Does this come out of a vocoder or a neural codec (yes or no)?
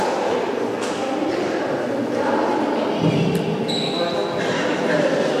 no